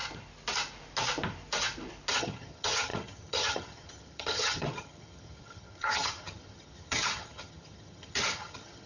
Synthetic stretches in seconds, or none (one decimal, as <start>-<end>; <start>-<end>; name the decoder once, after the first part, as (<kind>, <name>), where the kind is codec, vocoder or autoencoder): 2.1-8.9 (vocoder, HiFi-GAN)